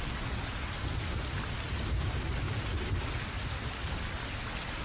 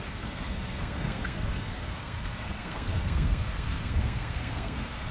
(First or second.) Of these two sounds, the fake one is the second